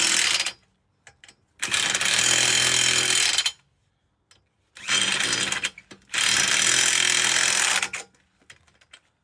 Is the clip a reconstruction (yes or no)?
no